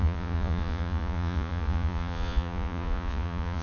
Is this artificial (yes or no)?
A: yes